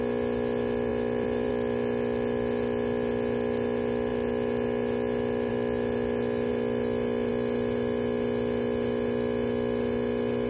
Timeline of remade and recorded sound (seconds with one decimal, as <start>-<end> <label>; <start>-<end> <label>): 0.0-0.9 recorded; 0.9-1.5 remade; 1.5-10.5 recorded